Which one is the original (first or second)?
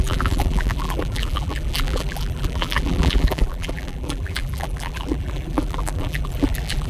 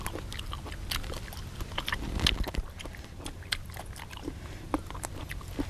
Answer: second